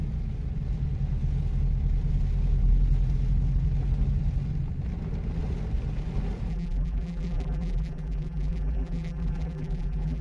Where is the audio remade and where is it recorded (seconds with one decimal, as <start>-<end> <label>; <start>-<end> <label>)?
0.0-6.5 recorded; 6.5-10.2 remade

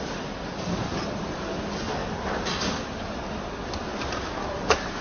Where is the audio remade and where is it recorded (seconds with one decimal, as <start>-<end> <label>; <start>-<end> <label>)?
0.0-5.0 recorded

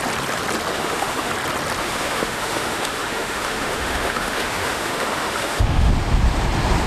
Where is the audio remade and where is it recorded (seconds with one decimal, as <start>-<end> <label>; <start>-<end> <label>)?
0.0-0.7 recorded; 0.7-1.3 remade; 1.3-1.8 recorded; 1.8-5.9 remade; 5.9-6.9 recorded